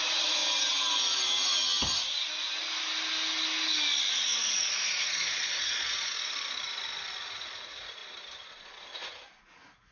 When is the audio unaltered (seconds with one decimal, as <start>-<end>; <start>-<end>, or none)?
0.4-4.1; 6.1-7.2; 8.0-8.5